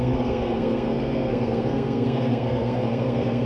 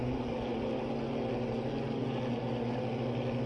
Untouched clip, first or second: second